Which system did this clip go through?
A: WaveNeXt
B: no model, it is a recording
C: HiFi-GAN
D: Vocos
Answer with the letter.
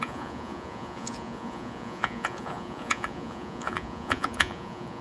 D